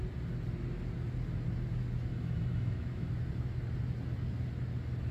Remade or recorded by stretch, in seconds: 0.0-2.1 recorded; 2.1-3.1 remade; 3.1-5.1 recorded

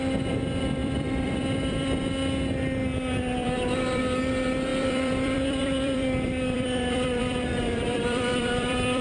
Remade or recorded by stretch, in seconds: 0.0-0.8 recorded; 0.8-2.1 remade; 2.1-3.4 recorded; 3.4-4.0 remade; 4.0-4.7 recorded; 4.7-9.0 remade

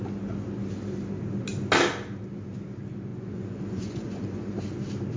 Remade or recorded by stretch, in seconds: 0.0-3.1 recorded; 3.1-4.6 remade; 4.6-5.2 recorded

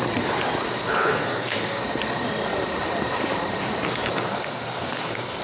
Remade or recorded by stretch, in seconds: 0.0-1.1 recorded; 1.1-1.8 remade; 1.8-4.3 recorded; 4.3-5.4 remade

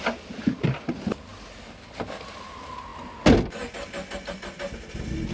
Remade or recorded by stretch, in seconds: 0.0-5.3 recorded

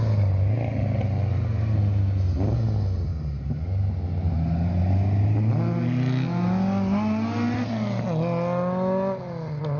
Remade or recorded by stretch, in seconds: 0.0-9.8 recorded